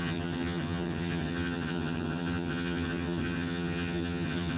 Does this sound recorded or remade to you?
remade